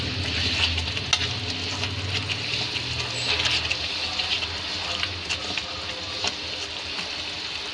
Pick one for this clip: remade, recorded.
recorded